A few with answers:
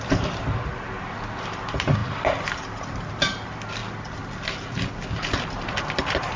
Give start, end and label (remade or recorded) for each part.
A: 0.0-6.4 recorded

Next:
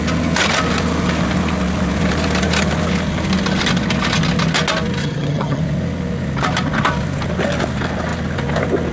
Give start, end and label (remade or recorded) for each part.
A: 0.0-5.0 recorded; 5.0-5.6 remade; 5.6-8.9 recorded

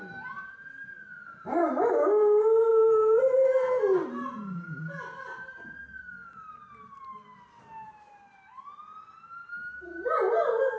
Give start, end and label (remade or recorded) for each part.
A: 0.0-10.8 recorded

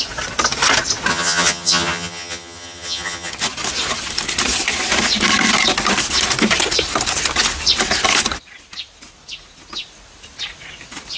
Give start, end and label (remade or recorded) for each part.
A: 0.0-1.1 recorded; 1.1-3.3 remade; 3.3-11.2 recorded

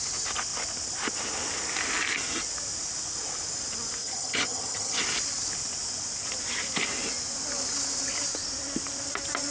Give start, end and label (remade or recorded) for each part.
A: 0.0-4.0 recorded; 4.0-5.0 remade; 5.0-9.5 recorded

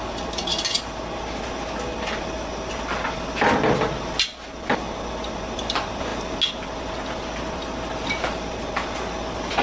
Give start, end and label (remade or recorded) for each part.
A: 0.0-9.6 recorded

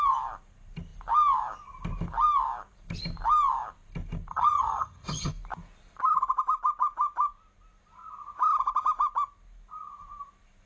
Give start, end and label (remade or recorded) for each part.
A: 0.0-4.3 recorded; 4.3-5.3 remade; 5.3-10.7 recorded

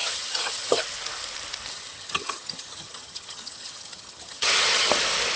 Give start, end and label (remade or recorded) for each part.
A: 0.0-0.8 remade; 0.8-1.7 recorded; 1.7-4.9 remade; 4.9-5.4 recorded